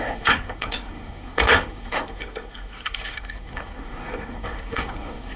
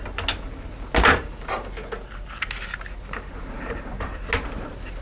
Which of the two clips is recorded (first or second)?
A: second